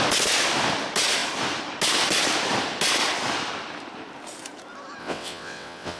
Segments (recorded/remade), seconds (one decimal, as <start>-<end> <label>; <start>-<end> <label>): 0.0-5.0 recorded; 5.0-6.0 remade